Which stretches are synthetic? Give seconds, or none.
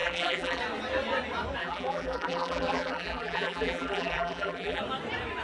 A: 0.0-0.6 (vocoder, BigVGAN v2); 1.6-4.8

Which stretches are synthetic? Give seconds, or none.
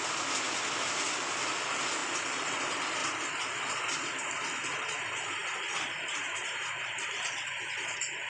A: none